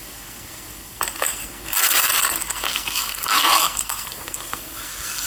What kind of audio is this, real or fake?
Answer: fake